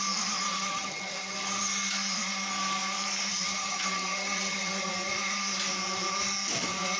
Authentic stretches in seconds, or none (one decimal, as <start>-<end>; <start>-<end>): 0.0-0.5; 1.7-3.3; 4.9-7.0